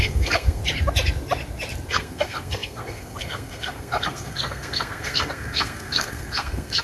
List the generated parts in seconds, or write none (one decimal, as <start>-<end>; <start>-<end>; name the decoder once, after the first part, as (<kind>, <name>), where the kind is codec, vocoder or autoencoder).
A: 0.0-0.6 (codec, SNAC); 1.9-6.8

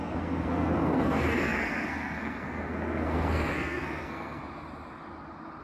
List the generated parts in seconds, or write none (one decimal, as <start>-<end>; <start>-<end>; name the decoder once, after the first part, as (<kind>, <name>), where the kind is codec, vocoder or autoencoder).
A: 0.0-4.4 (codec, SNAC)

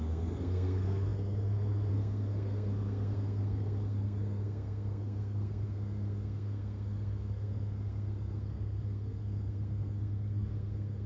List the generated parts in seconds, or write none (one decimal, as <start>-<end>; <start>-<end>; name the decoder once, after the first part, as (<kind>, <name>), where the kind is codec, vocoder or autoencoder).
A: 0.0-11.1 (codec, SNAC)

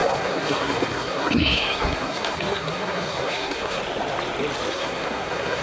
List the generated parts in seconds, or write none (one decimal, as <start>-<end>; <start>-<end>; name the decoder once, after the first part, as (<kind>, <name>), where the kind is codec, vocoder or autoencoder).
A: 0.0-3.8 (codec, SNAC); 4.7-5.6

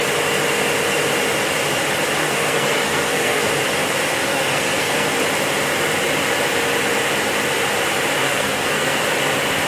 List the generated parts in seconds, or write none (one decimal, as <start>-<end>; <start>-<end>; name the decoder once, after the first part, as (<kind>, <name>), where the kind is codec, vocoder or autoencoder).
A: 2.2-3.5 (codec, SNAC); 4.3-5.1; 8.2-9.0

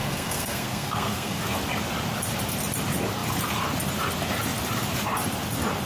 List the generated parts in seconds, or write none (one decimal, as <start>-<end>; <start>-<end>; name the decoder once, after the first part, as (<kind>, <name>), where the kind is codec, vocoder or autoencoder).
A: 0.0-1.4 (codec, SNAC)

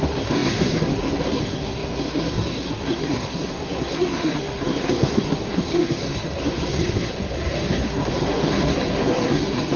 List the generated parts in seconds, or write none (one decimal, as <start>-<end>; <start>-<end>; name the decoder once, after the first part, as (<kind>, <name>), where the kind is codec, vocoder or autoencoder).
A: 0.0-9.8 (codec, SNAC)

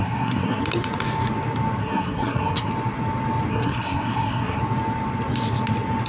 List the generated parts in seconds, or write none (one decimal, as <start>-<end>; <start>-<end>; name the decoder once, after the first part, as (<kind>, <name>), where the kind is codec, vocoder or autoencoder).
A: 0.0-0.6 (codec, SNAC); 1.8-2.7; 3.5-4.6